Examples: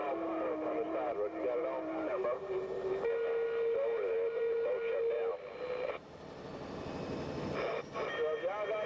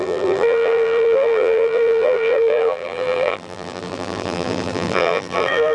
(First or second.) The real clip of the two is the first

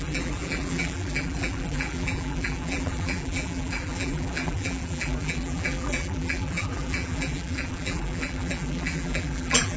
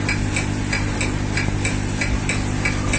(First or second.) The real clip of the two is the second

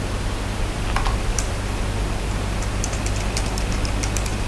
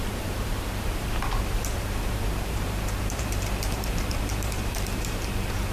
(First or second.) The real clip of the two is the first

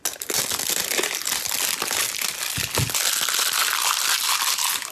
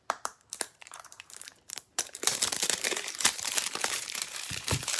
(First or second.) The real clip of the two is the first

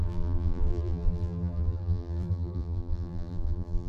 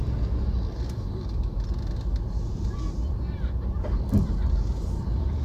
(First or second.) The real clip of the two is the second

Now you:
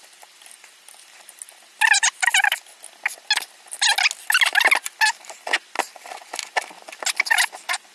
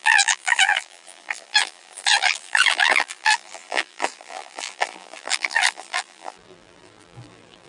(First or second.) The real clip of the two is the first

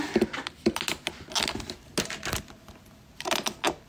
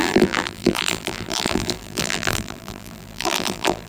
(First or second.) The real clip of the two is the first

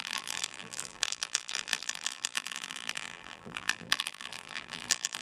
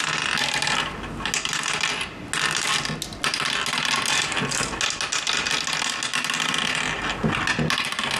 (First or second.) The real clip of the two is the second